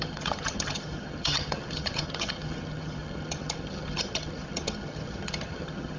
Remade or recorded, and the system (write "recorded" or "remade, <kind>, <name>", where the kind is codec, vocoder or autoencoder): remade, vocoder, HiFi-GAN